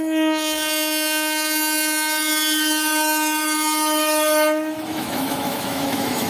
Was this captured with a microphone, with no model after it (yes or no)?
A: no